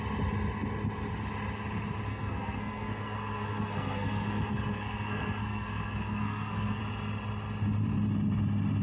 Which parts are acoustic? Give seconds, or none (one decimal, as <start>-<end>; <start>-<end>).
0.0-2.1; 6.8-8.8